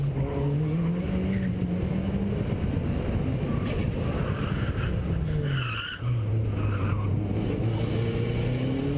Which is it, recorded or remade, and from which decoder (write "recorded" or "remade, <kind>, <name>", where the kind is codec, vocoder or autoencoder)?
recorded